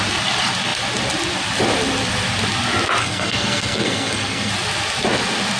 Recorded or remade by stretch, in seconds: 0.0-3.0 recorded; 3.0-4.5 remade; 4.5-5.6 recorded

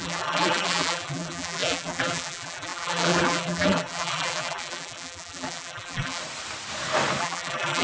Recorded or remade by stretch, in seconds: 0.0-6.2 remade; 6.2-7.2 recorded; 7.2-7.8 remade